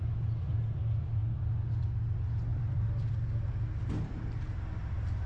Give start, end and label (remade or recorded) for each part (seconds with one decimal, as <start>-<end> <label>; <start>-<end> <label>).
0.0-2.5 recorded; 2.5-3.1 remade; 3.1-5.3 recorded